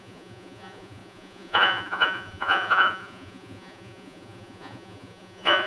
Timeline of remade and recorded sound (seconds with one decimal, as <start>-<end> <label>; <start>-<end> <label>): 0.0-5.7 remade